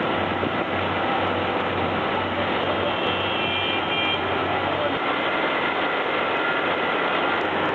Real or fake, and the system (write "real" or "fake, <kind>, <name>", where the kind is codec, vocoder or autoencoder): real